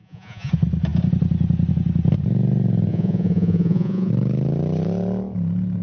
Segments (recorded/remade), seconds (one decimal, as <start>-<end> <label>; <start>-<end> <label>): 0.0-0.5 remade; 0.5-2.9 recorded; 2.9-4.1 remade; 4.1-5.8 recorded